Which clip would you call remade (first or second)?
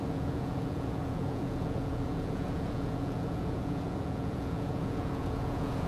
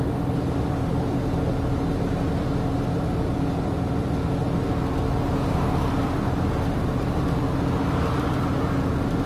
first